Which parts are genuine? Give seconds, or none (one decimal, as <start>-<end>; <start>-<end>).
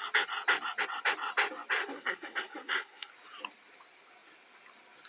0.0-1.8; 3.1-5.1